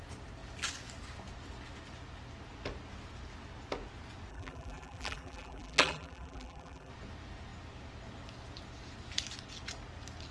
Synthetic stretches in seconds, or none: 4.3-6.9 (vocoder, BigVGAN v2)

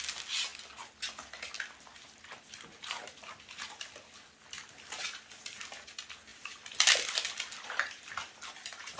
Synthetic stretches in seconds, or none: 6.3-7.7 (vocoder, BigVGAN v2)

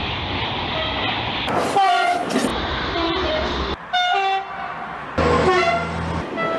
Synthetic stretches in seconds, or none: 2.5-3.8 (vocoder, BigVGAN v2)

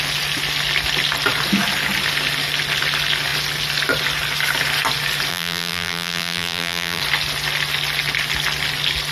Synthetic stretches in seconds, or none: 5.3-7.0 (vocoder, BigVGAN v2)

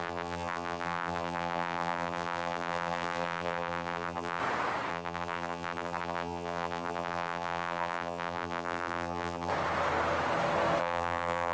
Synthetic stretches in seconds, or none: 0.0-4.4 (vocoder, BigVGAN v2); 4.9-9.5; 10.8-11.5

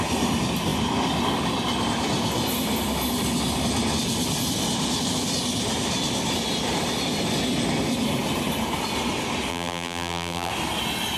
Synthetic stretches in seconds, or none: 9.5-10.5 (vocoder, BigVGAN v2)